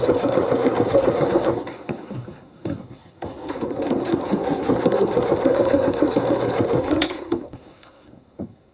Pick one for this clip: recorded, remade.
remade